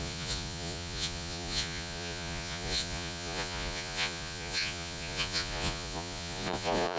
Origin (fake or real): fake